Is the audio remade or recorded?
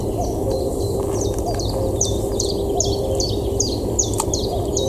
recorded